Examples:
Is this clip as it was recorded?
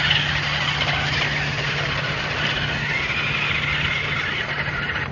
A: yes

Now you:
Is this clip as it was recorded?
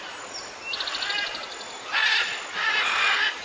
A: yes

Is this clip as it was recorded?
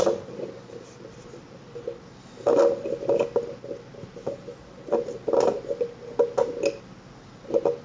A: yes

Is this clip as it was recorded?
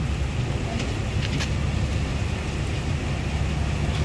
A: yes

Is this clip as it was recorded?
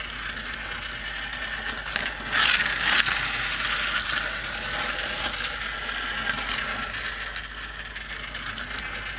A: yes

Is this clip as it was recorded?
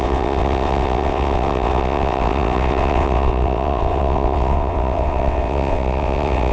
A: no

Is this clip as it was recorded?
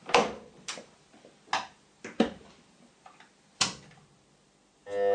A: yes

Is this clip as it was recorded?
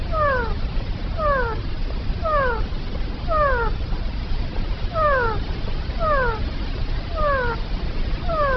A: yes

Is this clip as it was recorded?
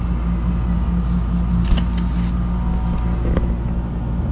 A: yes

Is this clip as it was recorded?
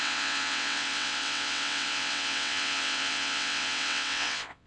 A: no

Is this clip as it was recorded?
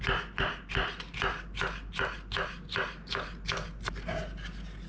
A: yes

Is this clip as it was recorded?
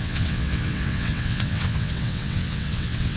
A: no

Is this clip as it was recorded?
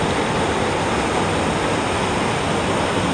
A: yes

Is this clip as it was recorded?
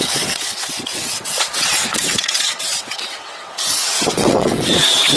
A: no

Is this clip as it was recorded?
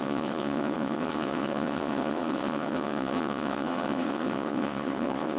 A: no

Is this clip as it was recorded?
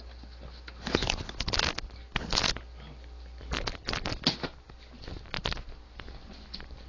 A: yes